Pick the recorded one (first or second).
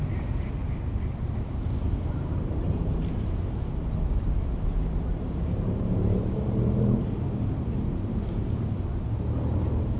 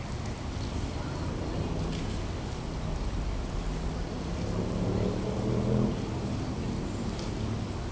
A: second